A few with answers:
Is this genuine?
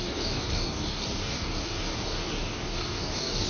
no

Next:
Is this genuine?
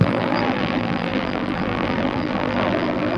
no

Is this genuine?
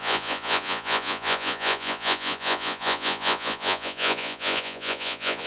no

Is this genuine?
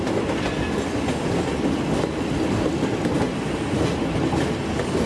yes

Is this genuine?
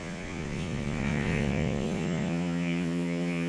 no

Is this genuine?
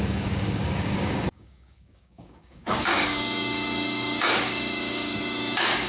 no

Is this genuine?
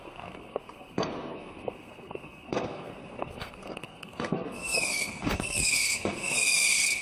no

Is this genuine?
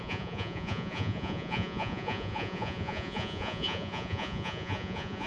no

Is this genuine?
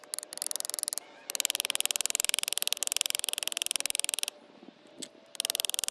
yes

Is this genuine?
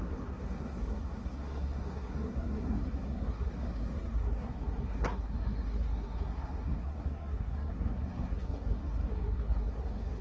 no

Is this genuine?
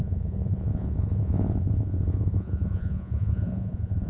no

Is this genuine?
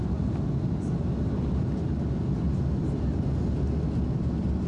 yes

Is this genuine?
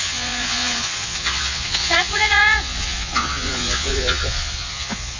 no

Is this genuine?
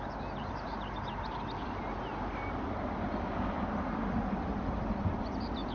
yes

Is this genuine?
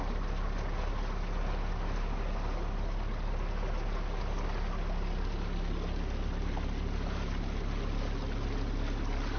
yes